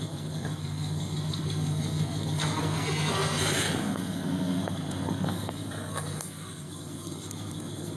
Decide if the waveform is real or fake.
fake